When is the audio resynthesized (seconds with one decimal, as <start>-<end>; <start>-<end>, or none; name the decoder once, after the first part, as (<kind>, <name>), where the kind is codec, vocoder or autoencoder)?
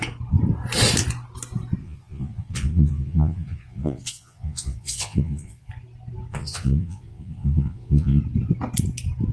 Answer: 1.8-5.7 (vocoder, Vocos); 6.3-8.2